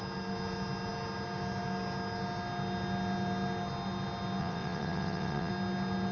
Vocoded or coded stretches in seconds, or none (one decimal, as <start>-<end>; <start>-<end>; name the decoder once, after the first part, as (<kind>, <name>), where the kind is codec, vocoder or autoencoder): 4.4-5.5 (vocoder, WaveNeXt)